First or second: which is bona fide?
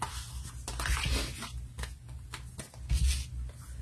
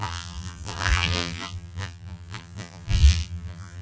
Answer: first